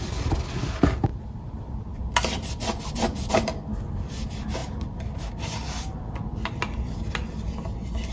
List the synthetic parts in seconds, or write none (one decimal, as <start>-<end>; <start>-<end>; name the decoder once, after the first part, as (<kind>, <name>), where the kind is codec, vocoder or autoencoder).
none